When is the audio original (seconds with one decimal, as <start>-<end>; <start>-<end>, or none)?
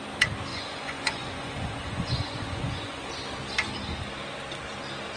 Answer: 0.0-0.5; 3.1-5.2